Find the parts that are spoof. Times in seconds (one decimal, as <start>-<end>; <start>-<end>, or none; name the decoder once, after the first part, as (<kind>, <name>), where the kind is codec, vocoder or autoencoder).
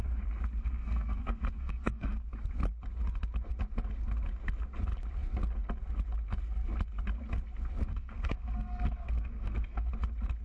0.6-2.2 (codec, SNAC); 7.9-9.9